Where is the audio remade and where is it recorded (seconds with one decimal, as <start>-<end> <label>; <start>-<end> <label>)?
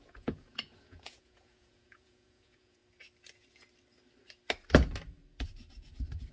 0.0-2.8 remade; 2.8-6.3 recorded